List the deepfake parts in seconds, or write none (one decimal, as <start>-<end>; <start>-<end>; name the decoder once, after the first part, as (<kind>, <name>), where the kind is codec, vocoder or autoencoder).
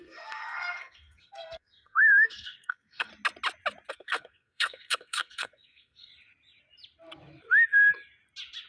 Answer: 0.0-3.1 (codec, SNAC); 3.9-6.1